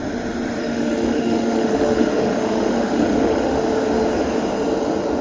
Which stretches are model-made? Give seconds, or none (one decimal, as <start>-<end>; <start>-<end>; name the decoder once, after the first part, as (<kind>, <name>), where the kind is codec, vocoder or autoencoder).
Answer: 0.6-3.7 (autoencoder, DAC-VAE)